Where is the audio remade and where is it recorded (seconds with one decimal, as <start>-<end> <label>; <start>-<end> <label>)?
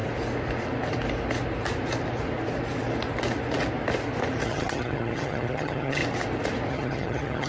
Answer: 0.0-4.4 recorded; 4.4-6.0 remade; 6.0-6.7 recorded; 6.7-7.5 remade